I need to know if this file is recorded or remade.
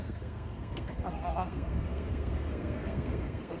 remade